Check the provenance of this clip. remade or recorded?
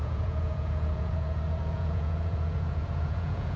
remade